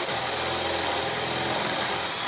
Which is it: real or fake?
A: real